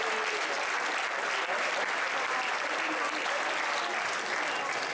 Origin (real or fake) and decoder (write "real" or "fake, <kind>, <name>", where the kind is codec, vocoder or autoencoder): real